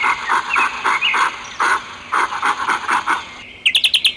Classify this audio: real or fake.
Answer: real